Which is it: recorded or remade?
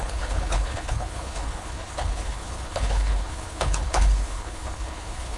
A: remade